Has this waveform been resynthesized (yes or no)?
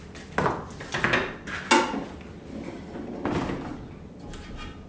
no